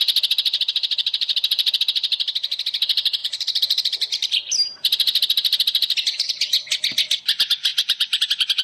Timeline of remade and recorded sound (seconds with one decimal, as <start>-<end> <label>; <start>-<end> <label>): 0.0-1.0 recorded; 1.0-1.8 remade; 1.8-3.2 recorded; 3.2-4.4 remade; 4.4-7.7 recorded; 7.7-8.2 remade; 8.2-8.6 recorded